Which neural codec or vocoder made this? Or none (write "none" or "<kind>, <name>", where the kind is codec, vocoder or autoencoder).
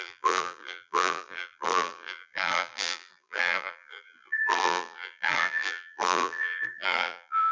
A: vocoder, BigVGAN v2